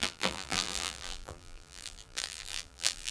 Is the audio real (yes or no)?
no